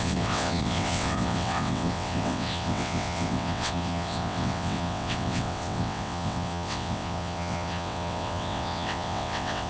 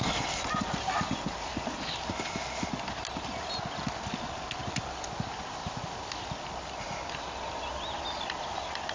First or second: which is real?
second